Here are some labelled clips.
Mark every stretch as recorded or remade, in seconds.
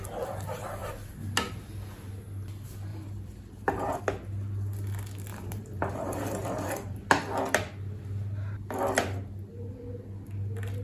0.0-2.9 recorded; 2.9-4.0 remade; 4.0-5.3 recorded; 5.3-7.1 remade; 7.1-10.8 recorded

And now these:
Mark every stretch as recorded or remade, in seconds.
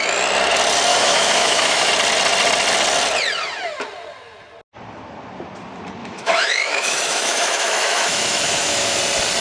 0.0-0.9 recorded; 0.9-1.9 remade; 1.9-6.0 recorded; 6.0-9.0 remade; 9.0-9.4 recorded